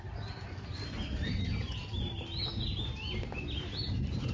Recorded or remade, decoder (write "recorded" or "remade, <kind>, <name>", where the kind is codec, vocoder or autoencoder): recorded